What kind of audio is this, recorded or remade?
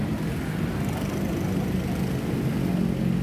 recorded